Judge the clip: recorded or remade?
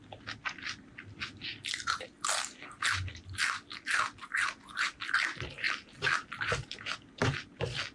recorded